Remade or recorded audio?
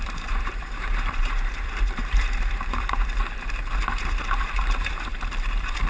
remade